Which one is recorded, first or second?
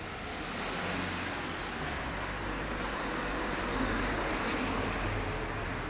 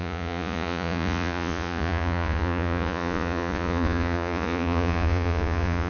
first